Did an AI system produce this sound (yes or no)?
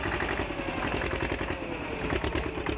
no